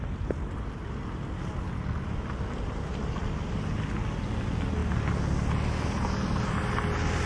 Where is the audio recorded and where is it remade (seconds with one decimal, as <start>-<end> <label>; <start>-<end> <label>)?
0.0-7.3 recorded